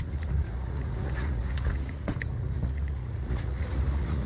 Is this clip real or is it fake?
fake